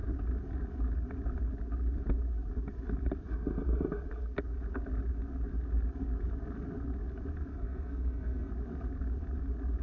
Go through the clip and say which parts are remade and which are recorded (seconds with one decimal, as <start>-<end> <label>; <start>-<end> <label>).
0.0-7.5 recorded; 7.5-8.5 remade; 8.5-9.8 recorded